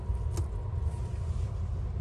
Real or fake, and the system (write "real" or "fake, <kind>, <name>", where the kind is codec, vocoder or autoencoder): real